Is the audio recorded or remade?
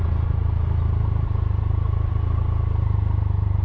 recorded